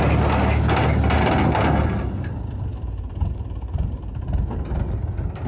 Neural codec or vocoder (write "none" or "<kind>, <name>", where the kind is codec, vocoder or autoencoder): none